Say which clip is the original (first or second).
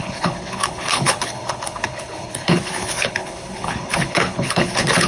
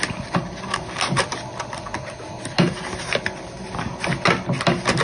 second